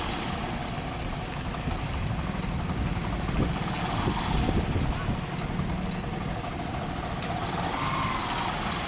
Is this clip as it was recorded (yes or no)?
yes